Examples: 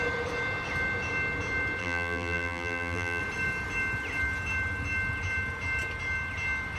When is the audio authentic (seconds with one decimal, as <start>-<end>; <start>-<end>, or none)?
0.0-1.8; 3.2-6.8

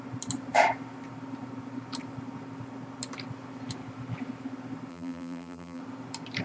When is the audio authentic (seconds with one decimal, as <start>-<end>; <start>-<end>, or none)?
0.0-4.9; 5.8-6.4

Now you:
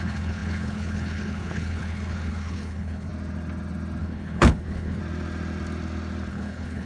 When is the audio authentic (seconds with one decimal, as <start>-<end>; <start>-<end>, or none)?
3.1-4.0; 5.0-6.3

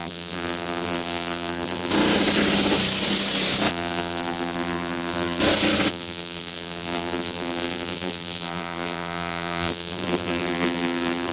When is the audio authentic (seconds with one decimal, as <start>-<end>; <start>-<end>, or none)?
1.9-3.7; 5.4-5.9

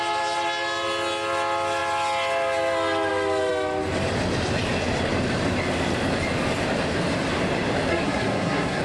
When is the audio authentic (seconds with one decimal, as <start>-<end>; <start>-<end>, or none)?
0.0-7.9

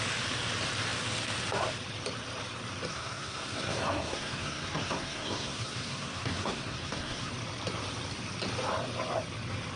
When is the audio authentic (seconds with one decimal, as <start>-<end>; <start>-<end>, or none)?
0.0-2.9; 7.3-9.8